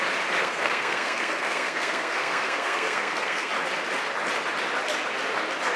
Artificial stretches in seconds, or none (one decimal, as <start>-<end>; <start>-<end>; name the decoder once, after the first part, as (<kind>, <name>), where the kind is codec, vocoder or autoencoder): 0.4-3.5 (codec, SNAC)